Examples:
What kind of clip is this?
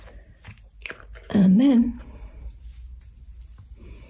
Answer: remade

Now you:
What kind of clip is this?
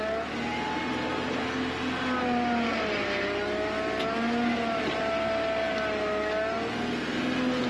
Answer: recorded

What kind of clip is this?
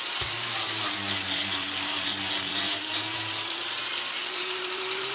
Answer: remade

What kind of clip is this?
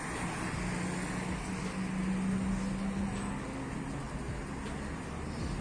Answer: recorded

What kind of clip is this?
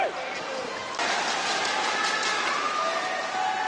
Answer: recorded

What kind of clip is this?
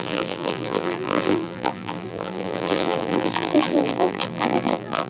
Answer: remade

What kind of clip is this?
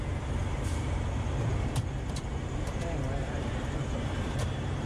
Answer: remade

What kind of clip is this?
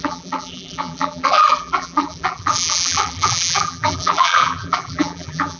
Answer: remade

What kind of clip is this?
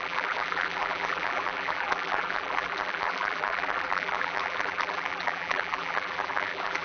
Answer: remade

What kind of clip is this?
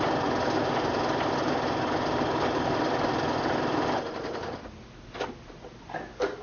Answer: recorded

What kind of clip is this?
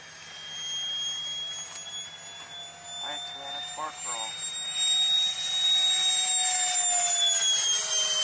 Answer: recorded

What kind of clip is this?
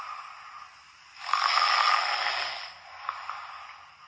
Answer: recorded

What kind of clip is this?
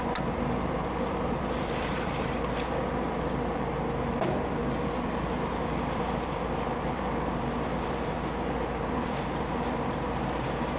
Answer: remade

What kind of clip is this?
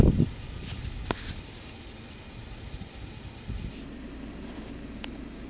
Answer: recorded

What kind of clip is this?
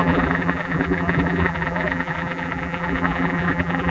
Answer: remade